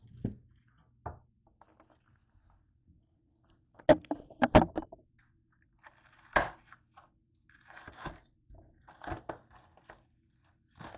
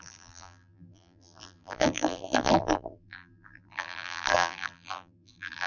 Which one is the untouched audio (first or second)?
first